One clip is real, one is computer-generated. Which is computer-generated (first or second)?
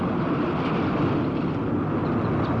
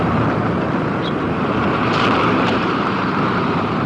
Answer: second